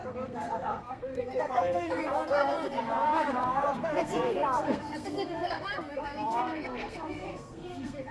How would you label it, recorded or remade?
remade